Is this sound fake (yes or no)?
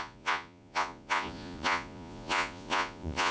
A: yes